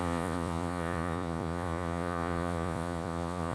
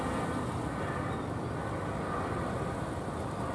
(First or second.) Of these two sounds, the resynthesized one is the first